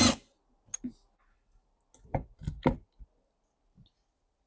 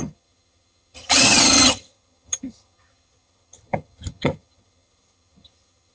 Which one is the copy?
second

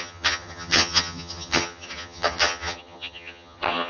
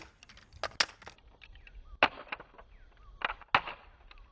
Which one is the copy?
first